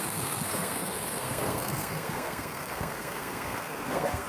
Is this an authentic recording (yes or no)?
no